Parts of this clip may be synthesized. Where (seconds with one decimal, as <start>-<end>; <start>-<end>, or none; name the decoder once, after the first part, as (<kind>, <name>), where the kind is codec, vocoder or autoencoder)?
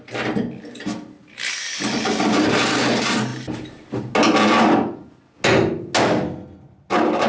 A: 3.3-3.9 (vocoder, BigVGAN v2)